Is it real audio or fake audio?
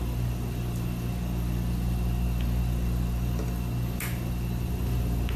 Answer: real